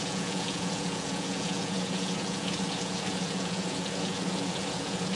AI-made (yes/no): yes